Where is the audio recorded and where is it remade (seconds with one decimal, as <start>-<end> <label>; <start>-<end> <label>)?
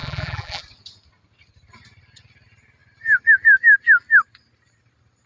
0.0-0.6 remade; 0.6-5.3 recorded